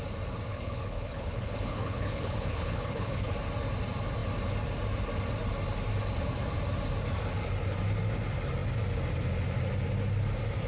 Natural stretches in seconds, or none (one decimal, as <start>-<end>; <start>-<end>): 0.0-0.5; 3.3-10.7